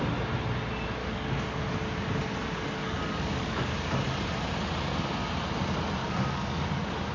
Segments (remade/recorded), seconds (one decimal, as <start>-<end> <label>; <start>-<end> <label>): 0.0-1.0 recorded; 1.0-1.6 remade; 1.6-2.8 recorded; 2.8-3.7 remade; 3.7-6.0 recorded; 6.0-7.1 remade